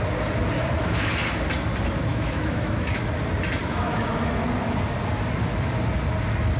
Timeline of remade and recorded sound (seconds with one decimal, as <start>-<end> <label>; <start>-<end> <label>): 0.0-2.1 recorded; 2.1-3.0 remade; 3.0-3.6 recorded; 3.6-4.4 remade; 4.4-6.6 recorded